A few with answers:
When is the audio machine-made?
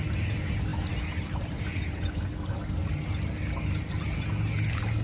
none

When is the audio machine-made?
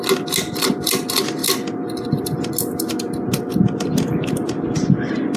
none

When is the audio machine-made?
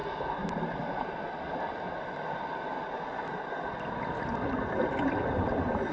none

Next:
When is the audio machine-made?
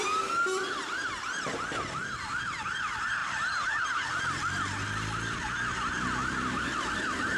2.0-2.5 (vocoder, BigVGAN v2); 6.2-6.8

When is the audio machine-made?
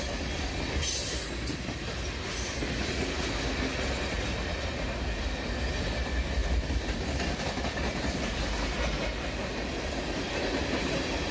6.4-7.5 (vocoder, BigVGAN v2)